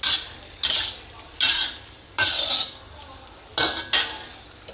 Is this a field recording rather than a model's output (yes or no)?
yes